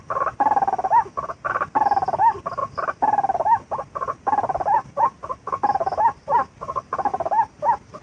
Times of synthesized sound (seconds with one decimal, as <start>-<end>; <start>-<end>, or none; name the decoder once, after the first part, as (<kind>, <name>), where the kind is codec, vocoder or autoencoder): none